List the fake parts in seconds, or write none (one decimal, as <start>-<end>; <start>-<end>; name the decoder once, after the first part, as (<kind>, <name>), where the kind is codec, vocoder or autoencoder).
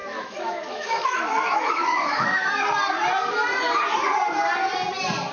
0.0-2.5 (autoencoder, DAC-VAE)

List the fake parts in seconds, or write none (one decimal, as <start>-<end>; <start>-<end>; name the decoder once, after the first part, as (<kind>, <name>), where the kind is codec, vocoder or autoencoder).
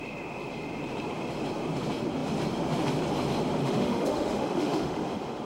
3.6-5.4 (autoencoder, DAC-VAE)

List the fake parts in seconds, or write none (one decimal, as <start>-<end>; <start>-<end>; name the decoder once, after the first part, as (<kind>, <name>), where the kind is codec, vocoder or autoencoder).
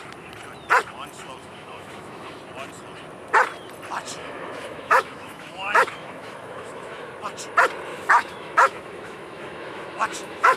1.4-2.4 (autoencoder, DAC-VAE); 4.2-7.1; 7.9-10.6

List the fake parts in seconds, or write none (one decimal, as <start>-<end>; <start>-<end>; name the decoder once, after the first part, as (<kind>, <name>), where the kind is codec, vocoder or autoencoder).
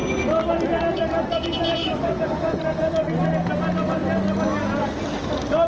1.8-2.6 (autoencoder, DAC-VAE)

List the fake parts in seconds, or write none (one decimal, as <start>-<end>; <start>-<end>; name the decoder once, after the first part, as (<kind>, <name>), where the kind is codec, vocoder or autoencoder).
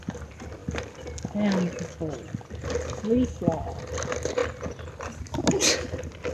none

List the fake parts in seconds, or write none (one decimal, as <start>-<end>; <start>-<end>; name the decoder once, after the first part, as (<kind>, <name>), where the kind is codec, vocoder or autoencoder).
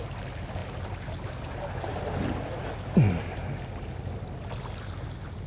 none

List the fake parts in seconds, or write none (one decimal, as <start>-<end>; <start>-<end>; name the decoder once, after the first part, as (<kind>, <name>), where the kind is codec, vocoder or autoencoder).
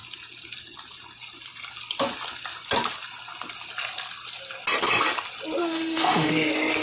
5.6-6.3 (autoencoder, DAC-VAE)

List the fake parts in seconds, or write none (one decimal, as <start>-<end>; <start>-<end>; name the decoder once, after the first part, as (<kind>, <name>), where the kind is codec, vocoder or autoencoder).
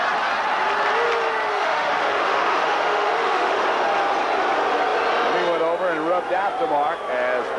1.5-3.6 (autoencoder, DAC-VAE)